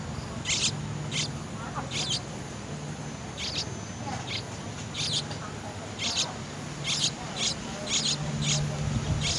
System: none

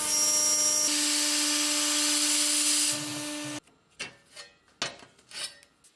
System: none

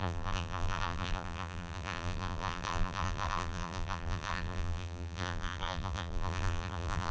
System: vocoder, BigVGAN v2